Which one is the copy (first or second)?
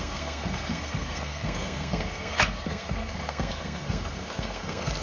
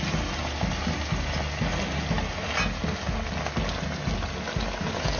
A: first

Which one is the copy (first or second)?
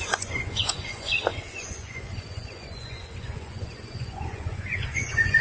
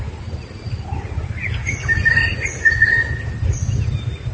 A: first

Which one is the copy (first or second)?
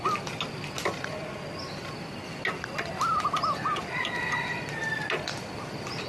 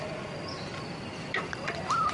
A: second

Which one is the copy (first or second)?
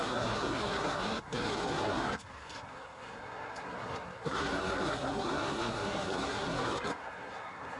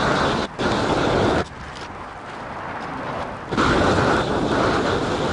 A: first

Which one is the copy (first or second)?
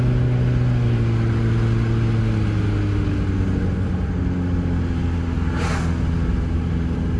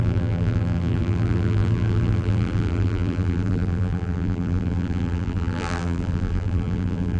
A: second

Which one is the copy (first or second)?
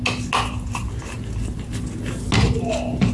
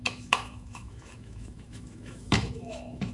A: second